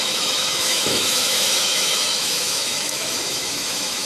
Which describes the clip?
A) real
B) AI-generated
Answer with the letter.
B